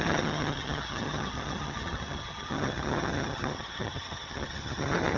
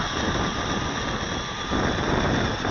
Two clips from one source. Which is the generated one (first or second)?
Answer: first